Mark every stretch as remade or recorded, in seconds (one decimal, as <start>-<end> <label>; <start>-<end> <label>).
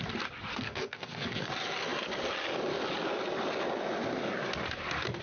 0.0-0.5 recorded; 0.5-1.5 remade; 1.5-5.2 recorded